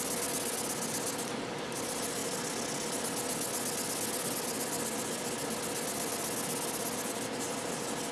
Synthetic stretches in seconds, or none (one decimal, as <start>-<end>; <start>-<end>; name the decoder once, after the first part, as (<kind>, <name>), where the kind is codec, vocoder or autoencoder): none